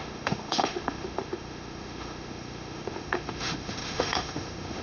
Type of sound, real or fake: fake